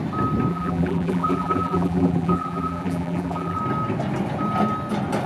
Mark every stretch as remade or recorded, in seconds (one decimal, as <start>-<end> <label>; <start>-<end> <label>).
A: 0.0-0.5 recorded; 0.5-3.6 remade; 3.6-5.3 recorded

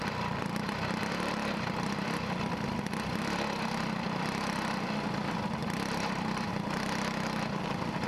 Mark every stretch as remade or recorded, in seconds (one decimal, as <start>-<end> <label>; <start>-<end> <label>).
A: 0.0-5.6 recorded; 5.6-6.5 remade; 6.5-8.1 recorded

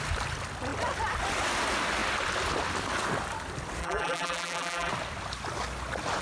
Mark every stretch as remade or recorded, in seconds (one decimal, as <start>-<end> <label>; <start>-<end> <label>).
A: 0.0-3.8 recorded; 3.8-4.9 remade; 4.9-6.2 recorded